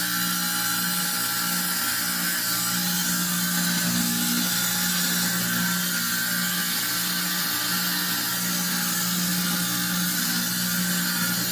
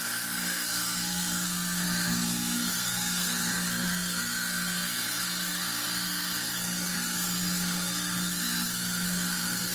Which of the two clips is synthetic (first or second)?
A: second